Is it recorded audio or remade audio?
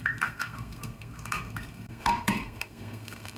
remade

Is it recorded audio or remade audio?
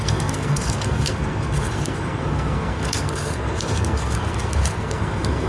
remade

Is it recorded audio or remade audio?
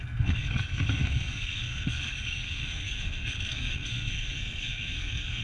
remade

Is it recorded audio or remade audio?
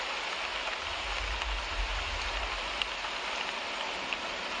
recorded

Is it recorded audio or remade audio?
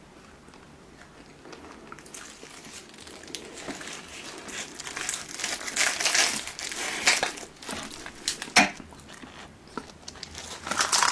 recorded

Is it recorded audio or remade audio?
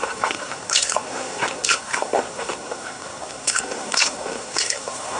remade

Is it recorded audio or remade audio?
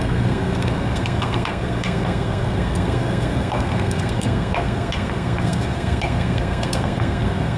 remade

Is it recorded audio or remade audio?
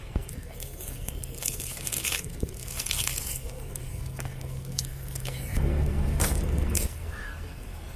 remade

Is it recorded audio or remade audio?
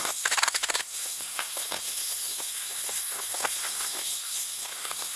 remade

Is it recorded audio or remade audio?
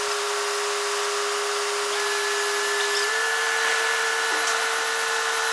recorded